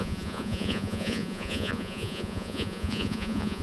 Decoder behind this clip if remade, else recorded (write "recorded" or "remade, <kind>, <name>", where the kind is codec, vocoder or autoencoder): remade, vocoder, Vocos